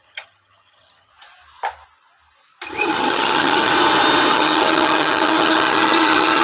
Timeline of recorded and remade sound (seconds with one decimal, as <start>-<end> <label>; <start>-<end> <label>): 0.0-1.1 remade; 1.1-2.8 recorded; 2.8-3.7 remade; 3.7-4.3 recorded; 4.3-6.4 remade